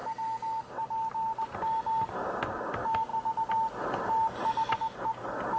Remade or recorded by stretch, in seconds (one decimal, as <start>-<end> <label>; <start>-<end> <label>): 0.0-5.6 recorded